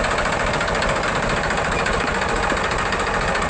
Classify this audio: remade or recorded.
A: recorded